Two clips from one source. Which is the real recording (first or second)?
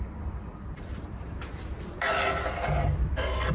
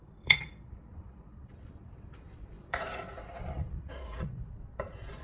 first